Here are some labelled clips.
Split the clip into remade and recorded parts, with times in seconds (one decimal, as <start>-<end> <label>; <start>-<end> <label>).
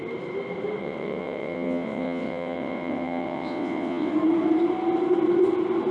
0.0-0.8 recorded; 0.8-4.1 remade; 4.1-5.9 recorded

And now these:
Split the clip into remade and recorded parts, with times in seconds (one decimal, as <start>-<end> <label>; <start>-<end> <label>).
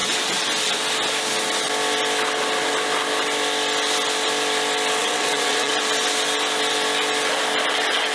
0.0-5.0 recorded; 5.0-5.7 remade; 5.7-8.1 recorded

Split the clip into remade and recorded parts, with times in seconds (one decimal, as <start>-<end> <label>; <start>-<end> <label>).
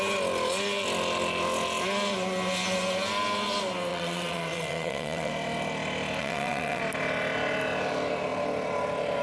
0.0-3.9 recorded; 3.9-5.3 remade; 5.3-6.2 recorded; 6.2-6.8 remade; 6.8-9.2 recorded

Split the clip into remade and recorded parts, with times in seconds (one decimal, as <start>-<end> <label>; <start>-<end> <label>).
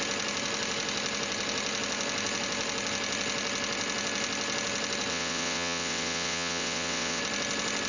0.0-5.1 recorded; 5.1-7.2 remade; 7.2-7.9 recorded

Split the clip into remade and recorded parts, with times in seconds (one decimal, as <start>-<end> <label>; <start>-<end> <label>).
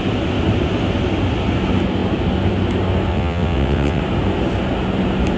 0.0-3.1 recorded; 3.1-4.0 remade; 4.0-5.4 recorded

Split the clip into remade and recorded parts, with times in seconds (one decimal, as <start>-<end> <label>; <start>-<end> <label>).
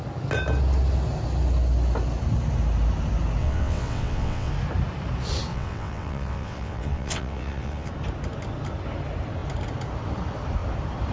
0.0-3.4 recorded; 3.4-4.5 remade; 4.5-5.5 recorded; 5.5-7.9 remade; 7.9-11.1 recorded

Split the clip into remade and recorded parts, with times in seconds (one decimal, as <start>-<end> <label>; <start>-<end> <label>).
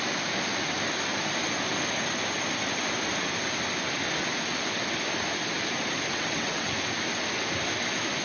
0.0-6.1 recorded; 6.1-6.7 remade; 6.7-8.2 recorded